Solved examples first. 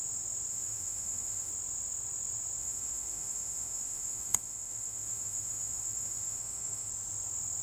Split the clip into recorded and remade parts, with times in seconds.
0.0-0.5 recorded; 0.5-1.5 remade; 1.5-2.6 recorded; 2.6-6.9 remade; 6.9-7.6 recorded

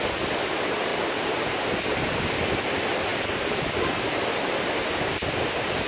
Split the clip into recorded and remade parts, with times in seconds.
0.0-5.9 recorded

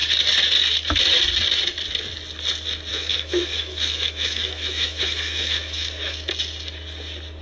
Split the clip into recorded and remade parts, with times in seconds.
0.0-2.9 recorded; 2.9-6.3 remade; 6.3-7.4 recorded

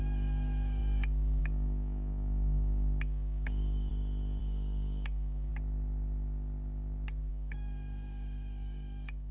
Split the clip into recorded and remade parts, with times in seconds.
0.0-3.9 remade; 3.9-4.4 recorded; 4.4-5.5 remade; 5.5-7.3 recorded; 7.3-9.3 remade

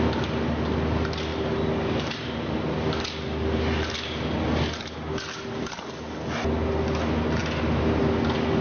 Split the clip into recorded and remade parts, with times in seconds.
0.0-8.6 recorded

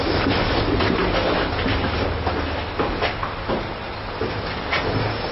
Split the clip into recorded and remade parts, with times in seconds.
0.0-5.3 recorded